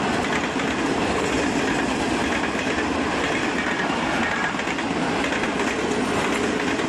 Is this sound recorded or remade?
recorded